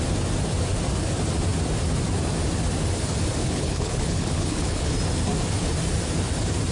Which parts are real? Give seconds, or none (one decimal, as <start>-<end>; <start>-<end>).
0.0-3.4; 4.9-6.7